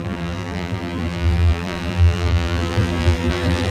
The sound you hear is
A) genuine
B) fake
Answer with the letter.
B